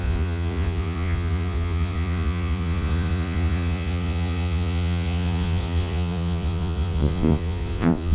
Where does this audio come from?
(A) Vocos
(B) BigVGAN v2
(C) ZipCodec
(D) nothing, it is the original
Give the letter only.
A